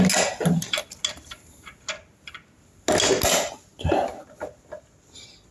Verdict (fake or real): real